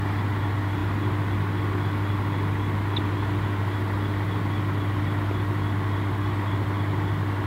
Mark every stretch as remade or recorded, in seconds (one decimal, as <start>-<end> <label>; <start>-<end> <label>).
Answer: 0.0-7.5 recorded